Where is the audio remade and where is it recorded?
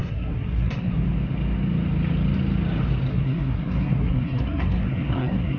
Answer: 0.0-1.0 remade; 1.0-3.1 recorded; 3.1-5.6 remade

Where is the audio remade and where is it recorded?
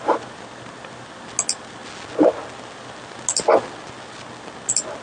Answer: 0.0-5.0 recorded